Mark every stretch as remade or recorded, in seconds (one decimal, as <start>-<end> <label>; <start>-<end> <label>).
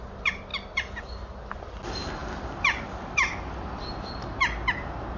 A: 0.0-5.2 recorded